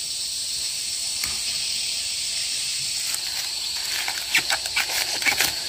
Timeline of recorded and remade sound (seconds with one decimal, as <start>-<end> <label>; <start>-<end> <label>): 0.0-2.7 remade; 2.7-3.4 recorded; 3.4-5.7 remade

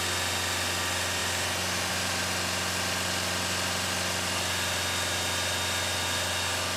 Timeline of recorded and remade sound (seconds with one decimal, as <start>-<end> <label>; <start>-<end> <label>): 0.0-6.8 recorded

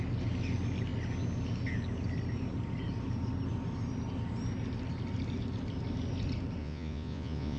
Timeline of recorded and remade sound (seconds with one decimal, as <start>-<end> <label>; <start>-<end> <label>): 0.0-6.6 recorded; 6.6-7.6 remade

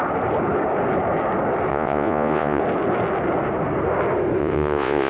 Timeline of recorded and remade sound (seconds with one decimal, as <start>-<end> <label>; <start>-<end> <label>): 0.0-1.7 recorded; 1.7-2.6 remade; 2.6-4.4 recorded; 4.4-5.1 remade

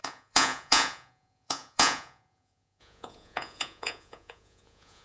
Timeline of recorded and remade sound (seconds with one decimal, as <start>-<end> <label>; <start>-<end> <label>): 0.0-5.0 remade

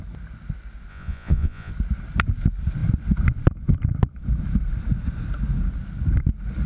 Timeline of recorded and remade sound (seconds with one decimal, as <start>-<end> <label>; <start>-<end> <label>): 0.0-0.9 recorded; 0.9-1.7 remade; 1.7-6.7 recorded